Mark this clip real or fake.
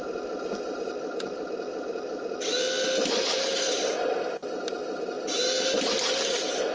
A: real